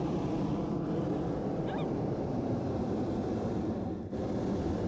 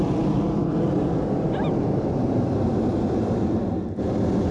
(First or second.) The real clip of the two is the second